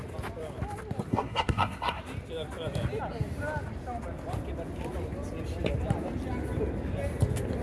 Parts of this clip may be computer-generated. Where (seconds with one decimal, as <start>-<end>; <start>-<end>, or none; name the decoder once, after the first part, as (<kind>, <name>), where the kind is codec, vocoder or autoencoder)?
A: 1.1-2.0 (codec, SNAC)